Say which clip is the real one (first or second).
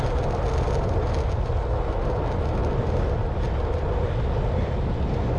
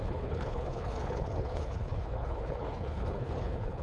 first